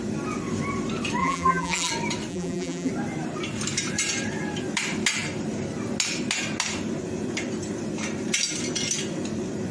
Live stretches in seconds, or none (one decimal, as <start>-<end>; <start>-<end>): 0.0-1.2; 1.9-2.3; 2.9-9.7